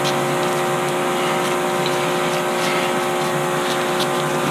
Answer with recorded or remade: recorded